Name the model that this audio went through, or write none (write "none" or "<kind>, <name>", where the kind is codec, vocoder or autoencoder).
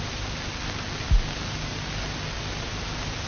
none